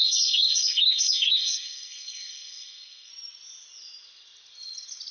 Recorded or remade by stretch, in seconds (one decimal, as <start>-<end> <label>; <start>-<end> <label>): 0.0-3.1 remade; 3.1-5.1 recorded